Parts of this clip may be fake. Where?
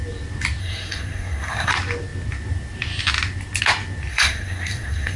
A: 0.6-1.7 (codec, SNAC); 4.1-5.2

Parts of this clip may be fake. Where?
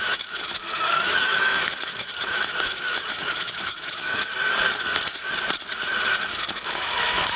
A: 0.0-4.2 (autoencoder, DAC-VAE); 6.2-7.4